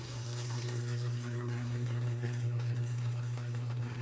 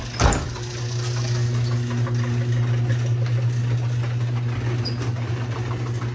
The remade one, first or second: first